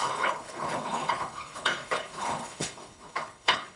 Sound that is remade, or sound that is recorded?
remade